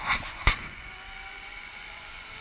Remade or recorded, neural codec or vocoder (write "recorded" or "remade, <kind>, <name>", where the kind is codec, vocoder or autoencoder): remade, vocoder, Vocos